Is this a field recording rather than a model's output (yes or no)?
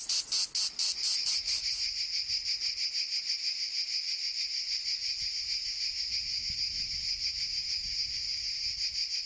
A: yes